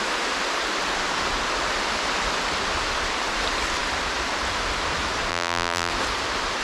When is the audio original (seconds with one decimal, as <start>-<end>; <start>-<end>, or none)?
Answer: 0.0-5.3; 5.9-6.6